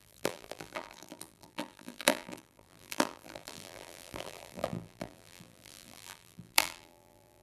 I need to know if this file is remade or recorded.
remade